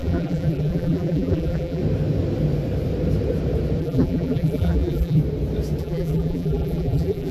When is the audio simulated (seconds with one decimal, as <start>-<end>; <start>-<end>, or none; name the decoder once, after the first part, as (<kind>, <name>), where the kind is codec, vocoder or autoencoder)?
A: 0.0-1.8 (vocoder, BigVGAN v2); 3.8-5.2; 5.8-7.3